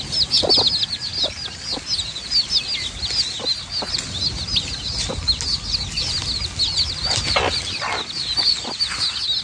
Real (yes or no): yes